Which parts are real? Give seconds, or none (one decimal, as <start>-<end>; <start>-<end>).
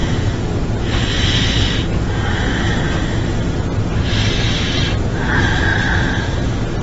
0.0-5.7; 6.3-6.8